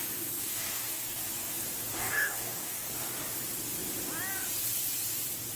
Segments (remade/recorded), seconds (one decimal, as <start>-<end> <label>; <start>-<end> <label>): 0.0-0.4 recorded; 0.4-1.2 remade; 1.2-1.9 recorded; 1.9-2.9 remade; 2.9-5.6 recorded